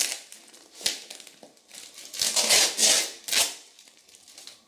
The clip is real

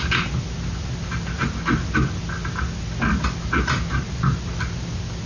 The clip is real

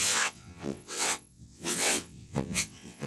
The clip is fake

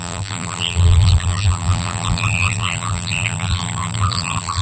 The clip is fake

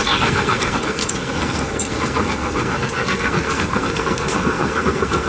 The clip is fake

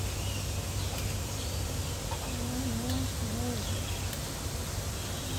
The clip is real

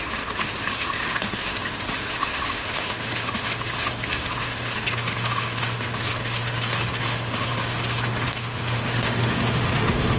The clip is fake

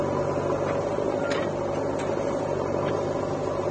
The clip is real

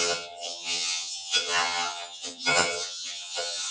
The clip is fake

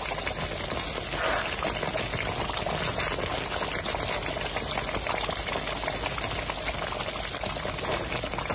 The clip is real